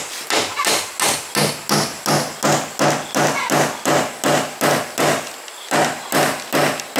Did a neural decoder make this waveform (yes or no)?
no